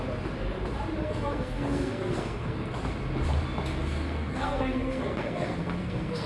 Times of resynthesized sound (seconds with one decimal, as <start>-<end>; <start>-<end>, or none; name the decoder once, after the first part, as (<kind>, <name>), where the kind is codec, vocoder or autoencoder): 1.0-2.7 (codec, SNAC); 3.7-6.3

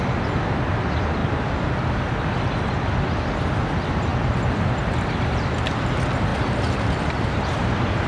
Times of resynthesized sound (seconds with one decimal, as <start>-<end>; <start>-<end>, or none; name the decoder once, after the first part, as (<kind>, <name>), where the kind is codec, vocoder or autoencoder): 6.3-8.1 (vocoder, BigVGAN v2)

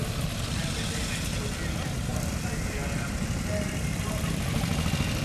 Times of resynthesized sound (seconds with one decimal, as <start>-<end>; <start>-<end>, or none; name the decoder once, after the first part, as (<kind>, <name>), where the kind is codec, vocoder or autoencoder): none

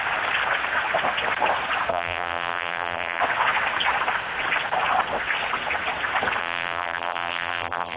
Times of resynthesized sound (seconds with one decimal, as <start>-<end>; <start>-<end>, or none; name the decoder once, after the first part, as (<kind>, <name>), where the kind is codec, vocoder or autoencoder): 1.9-3.2 (vocoder, BigVGAN v2); 6.4-8.0